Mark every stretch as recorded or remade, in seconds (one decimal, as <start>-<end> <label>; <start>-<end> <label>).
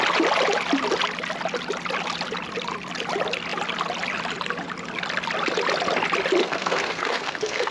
0.0-6.4 recorded; 6.4-7.7 remade